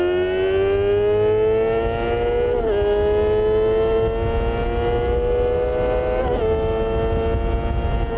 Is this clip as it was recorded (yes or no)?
yes